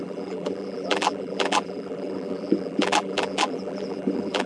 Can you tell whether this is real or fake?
fake